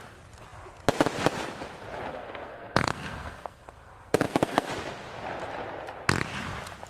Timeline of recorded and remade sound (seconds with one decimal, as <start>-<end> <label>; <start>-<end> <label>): 0.0-2.1 recorded; 2.1-4.7 remade; 4.7-6.9 recorded